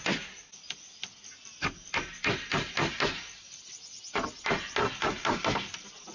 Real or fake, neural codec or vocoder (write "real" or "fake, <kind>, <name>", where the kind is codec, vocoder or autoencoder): real